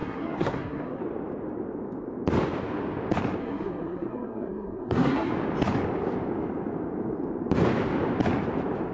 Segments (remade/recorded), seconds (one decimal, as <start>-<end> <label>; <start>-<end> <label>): 0.0-1.0 remade; 1.0-3.4 recorded; 3.4-5.3 remade; 5.3-8.9 recorded